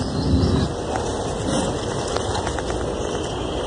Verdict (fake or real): real